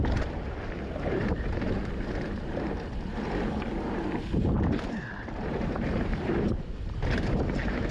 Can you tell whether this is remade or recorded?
remade